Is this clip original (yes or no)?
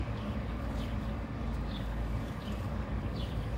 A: no